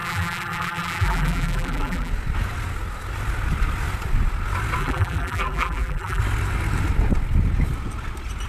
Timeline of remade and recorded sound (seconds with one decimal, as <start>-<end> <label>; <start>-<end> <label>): 0.0-2.1 remade; 2.1-4.8 recorded; 4.8-6.2 remade; 6.2-8.5 recorded